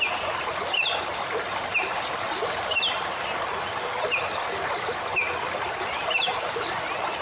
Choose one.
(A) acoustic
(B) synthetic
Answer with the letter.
A